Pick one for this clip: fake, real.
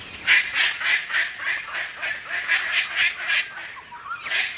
real